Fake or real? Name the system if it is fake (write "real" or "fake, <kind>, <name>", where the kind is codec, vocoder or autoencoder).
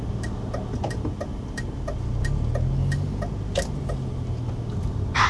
real